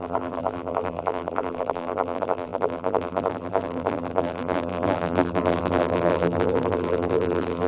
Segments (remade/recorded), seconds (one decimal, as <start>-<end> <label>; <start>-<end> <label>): 0.0-7.7 remade